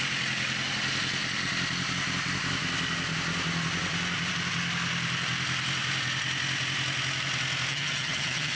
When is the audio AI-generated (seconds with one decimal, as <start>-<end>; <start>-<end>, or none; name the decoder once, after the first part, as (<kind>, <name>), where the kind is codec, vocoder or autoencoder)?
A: 7.7-8.6 (vocoder, HiFi-GAN)